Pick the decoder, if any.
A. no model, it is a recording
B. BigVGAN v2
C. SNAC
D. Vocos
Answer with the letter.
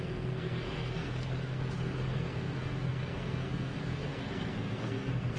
C